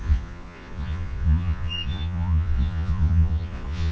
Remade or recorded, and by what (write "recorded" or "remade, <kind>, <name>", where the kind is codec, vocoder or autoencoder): remade, vocoder, Vocos